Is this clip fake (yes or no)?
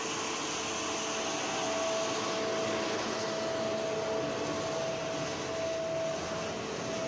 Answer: no